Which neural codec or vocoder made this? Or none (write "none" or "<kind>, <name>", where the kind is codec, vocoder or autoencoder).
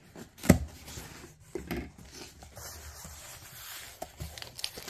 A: none